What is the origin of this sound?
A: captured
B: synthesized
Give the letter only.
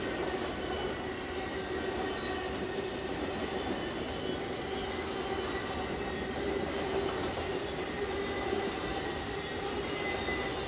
A